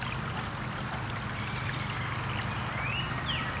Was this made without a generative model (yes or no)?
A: yes